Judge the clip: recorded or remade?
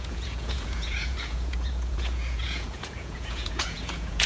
remade